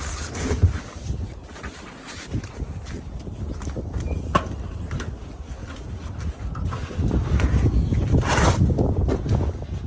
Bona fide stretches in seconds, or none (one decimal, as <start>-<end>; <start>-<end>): 0.0-9.9